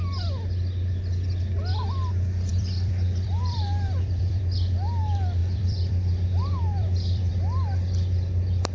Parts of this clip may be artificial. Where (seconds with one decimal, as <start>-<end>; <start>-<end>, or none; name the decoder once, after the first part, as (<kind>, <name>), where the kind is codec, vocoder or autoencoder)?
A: 2.5-4.4 (vocoder, BigVGAN v2); 5.4-7.3